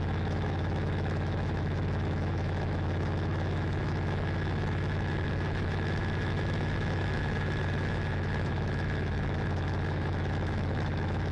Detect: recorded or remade remade